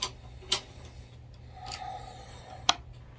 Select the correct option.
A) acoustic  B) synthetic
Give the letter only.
A